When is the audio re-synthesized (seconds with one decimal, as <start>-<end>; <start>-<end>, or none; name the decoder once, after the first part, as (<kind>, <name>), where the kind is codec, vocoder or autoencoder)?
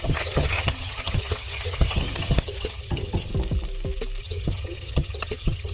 0.0-3.3 (vocoder, HiFi-GAN); 4.2-5.7